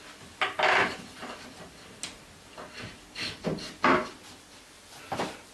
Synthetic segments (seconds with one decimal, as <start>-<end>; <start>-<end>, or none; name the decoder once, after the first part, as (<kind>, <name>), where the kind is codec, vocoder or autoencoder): none